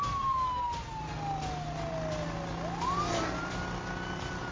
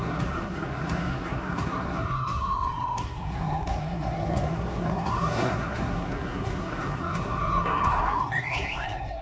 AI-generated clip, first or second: second